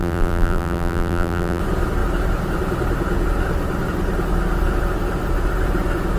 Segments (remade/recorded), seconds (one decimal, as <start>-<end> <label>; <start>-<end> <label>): 0.0-1.6 remade; 1.6-6.2 recorded